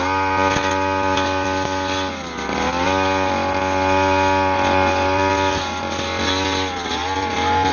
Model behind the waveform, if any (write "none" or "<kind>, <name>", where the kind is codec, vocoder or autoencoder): none